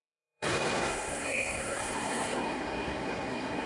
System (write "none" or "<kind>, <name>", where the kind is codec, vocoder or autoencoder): codec, SNAC